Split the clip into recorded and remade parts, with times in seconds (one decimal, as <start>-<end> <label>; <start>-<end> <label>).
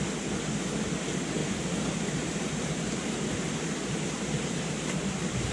0.0-1.4 recorded; 1.4-4.7 remade; 4.7-5.5 recorded